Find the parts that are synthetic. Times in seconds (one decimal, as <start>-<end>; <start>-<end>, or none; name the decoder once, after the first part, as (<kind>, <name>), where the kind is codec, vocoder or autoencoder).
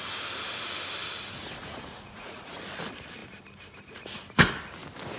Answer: 1.4-2.6 (vocoder, Vocos)